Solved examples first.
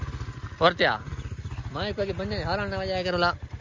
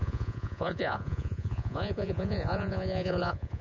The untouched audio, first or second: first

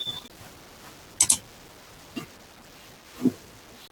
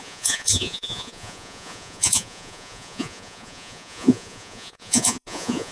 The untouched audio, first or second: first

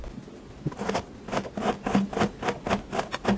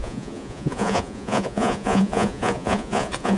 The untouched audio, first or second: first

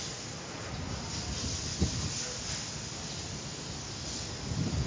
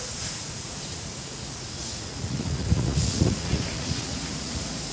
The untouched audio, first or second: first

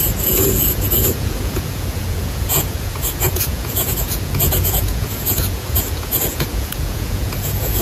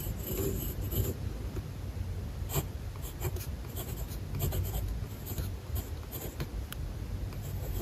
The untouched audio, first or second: second